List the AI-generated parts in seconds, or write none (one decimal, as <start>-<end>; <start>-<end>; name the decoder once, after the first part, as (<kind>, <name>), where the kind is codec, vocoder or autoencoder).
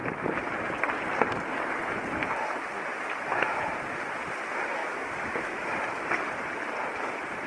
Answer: 4.8-5.6 (autoencoder, DAC-VAE)